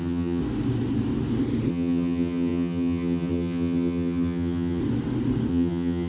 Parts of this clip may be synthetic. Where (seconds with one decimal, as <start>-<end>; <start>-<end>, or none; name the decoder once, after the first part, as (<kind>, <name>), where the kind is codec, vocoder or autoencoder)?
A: 0.0-0.4 (vocoder, HiFi-GAN); 1.7-4.8; 5.5-6.1